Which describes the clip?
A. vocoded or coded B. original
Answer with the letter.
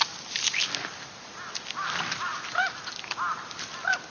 B